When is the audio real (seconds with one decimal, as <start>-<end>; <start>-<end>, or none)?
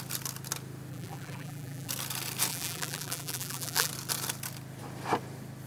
0.0-0.9; 1.9-2.5; 3.9-5.7